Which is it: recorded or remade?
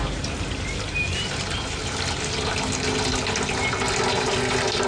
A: recorded